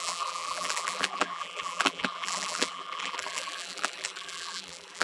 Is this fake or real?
fake